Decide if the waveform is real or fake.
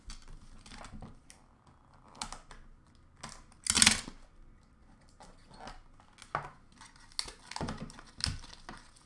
real